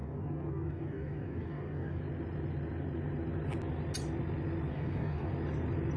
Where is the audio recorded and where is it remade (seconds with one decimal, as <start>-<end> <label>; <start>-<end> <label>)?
0.0-2.0 remade; 2.0-4.7 recorded; 4.7-5.3 remade; 5.3-6.0 recorded